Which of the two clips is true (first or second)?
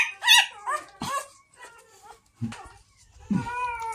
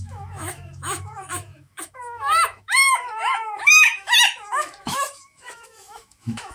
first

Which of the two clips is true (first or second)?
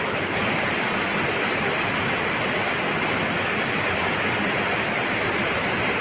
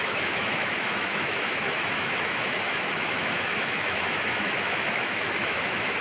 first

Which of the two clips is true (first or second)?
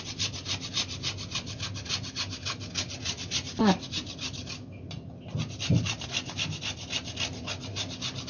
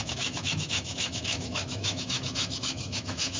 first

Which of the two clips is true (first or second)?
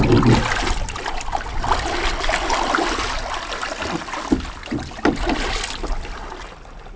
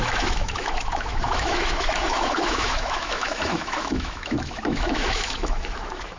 first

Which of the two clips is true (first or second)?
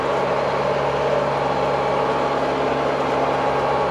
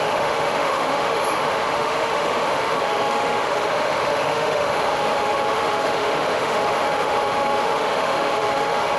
first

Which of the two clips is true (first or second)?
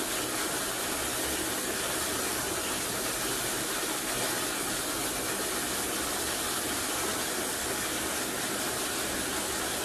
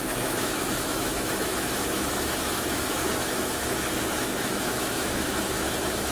first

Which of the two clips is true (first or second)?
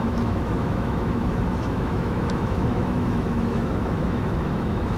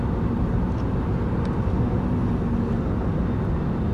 second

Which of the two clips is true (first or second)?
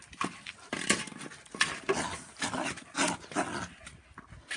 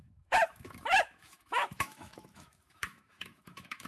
first